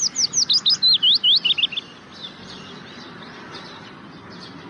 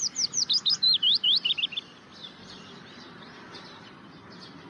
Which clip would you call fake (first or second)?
second